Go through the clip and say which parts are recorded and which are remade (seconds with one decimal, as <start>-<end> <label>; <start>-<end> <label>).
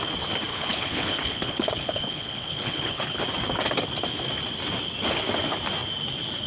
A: 0.0-0.5 recorded; 0.5-3.2 remade; 3.2-6.5 recorded